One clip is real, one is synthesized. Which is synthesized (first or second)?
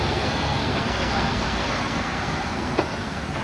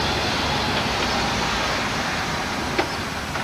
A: first